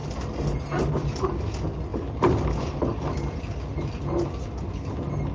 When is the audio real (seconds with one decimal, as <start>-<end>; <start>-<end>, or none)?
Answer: 0.0-5.3